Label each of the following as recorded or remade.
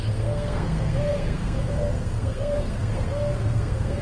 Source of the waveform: remade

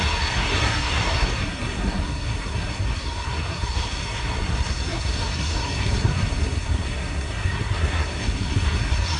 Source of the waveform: remade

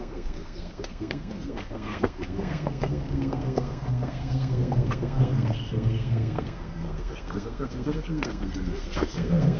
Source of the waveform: remade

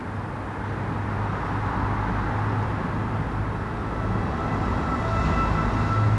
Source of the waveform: recorded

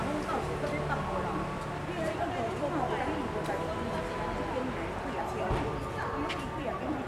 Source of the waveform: recorded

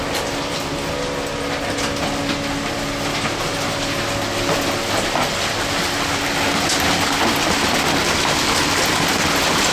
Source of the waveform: recorded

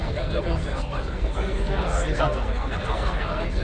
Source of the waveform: remade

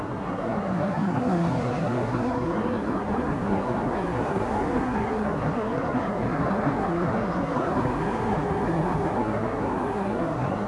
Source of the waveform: remade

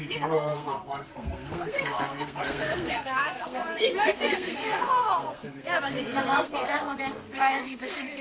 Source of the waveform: remade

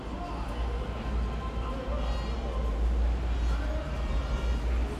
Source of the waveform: recorded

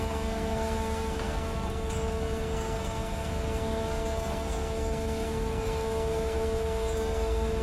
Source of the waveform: remade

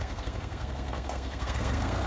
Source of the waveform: remade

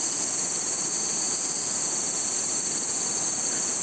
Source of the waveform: recorded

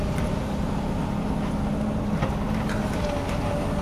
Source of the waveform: recorded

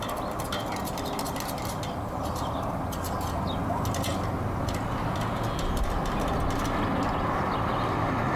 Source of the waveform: recorded